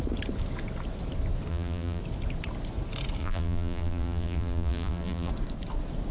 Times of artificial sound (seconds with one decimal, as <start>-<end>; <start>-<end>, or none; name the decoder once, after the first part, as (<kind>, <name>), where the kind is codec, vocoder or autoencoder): 1.5-2.0 (vocoder, BigVGAN v2); 3.2-5.3